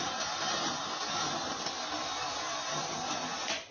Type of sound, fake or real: real